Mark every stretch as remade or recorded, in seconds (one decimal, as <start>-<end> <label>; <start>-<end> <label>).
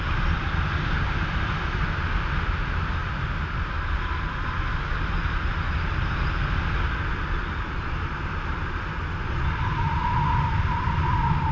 0.0-11.5 recorded